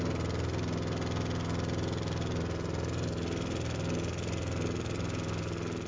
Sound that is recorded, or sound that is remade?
recorded